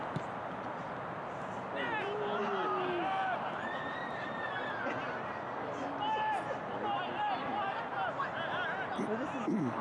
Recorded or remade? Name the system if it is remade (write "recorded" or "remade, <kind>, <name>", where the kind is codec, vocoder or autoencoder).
recorded